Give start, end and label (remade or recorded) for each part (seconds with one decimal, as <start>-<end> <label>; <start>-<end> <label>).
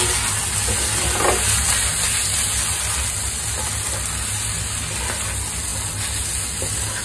0.0-7.0 recorded